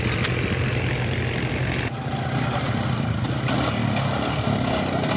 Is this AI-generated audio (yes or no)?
no